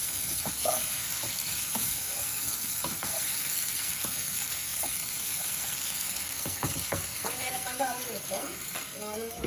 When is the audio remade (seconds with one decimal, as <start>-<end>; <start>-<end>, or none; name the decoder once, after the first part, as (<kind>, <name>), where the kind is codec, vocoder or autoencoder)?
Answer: 0.0-9.5 (codec, SNAC)